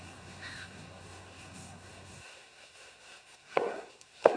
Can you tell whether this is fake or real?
fake